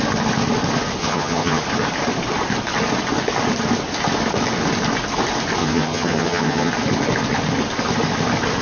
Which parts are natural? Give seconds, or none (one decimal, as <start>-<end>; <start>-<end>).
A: 0.0-1.0; 1.6-5.6; 6.7-8.6